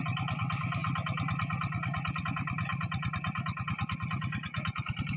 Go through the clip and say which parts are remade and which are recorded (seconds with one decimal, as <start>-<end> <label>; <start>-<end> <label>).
0.0-5.2 recorded